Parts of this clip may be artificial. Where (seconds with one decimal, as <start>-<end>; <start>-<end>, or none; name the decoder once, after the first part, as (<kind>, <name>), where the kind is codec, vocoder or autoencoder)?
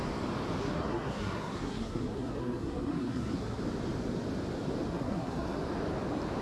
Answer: 0.6-3.6 (codec, SNAC); 4.9-5.6